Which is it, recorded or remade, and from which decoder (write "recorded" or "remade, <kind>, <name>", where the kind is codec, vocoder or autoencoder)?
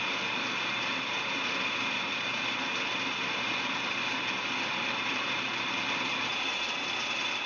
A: recorded